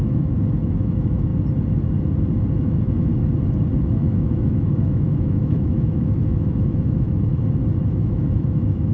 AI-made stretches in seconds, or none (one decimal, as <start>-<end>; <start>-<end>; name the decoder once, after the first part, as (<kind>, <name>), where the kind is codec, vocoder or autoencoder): 0.0-1.3 (autoencoder, DAC-VAE); 2.5-3.1; 3.8-7.3; 7.9-8.9